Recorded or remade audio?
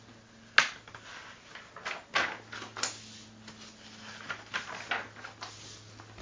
recorded